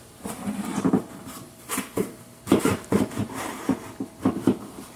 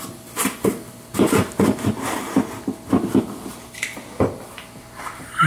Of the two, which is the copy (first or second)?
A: first